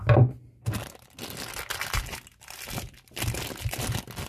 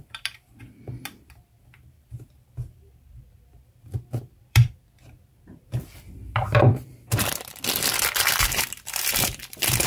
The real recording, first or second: first